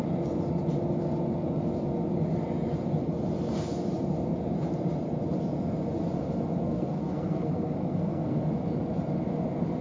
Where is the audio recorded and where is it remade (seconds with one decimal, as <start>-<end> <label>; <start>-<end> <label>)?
0.0-6.6 recorded; 6.6-8.4 remade; 8.4-9.8 recorded